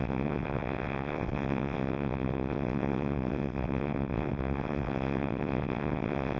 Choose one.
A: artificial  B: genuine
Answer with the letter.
A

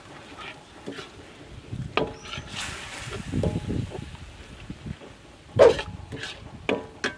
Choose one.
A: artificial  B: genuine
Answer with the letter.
B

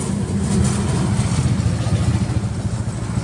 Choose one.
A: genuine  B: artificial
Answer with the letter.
A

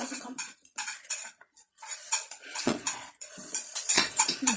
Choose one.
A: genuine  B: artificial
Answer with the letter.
B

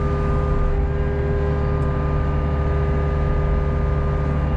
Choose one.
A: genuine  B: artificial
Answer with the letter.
A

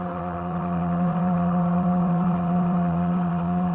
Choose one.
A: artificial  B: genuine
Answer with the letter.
A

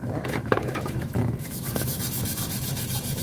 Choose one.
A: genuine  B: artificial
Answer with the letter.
B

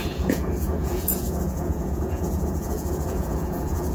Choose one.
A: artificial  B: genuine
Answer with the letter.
A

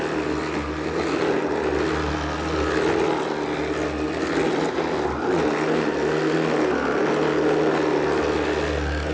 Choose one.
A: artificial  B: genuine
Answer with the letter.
B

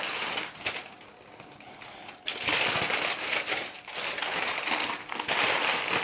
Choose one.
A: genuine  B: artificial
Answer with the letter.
A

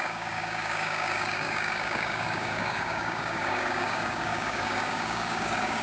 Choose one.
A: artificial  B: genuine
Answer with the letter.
A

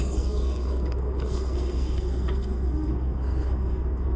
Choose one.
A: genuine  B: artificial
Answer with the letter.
B